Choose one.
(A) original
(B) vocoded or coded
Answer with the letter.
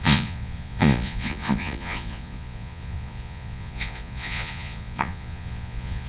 B